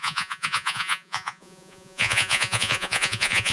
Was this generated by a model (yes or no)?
yes